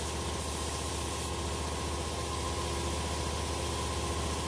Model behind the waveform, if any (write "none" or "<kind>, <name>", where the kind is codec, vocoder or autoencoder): none